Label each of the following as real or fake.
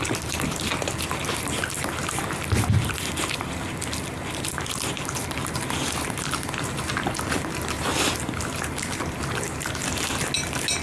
real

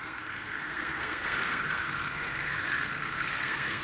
fake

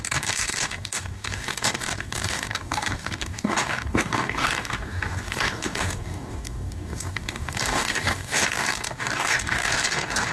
fake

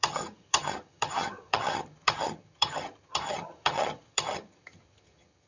fake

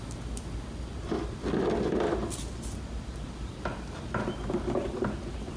real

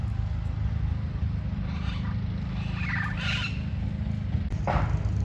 real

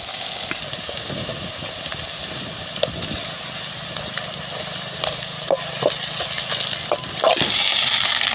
real